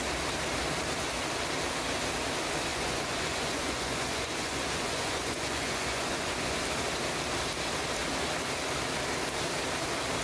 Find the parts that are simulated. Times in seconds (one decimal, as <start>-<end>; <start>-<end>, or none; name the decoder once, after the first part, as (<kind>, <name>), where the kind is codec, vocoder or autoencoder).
2.7-6.6 (vocoder, Vocos)